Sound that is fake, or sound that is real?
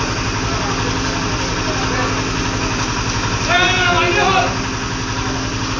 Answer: real